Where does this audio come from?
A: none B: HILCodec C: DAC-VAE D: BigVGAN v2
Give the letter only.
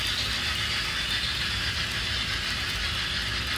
A